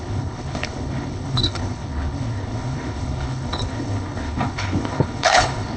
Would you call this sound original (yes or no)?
no